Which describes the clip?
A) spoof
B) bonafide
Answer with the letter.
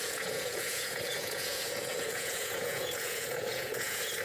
A